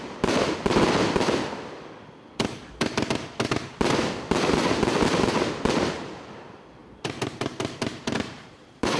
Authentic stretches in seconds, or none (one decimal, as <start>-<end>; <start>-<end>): 0.0-6.8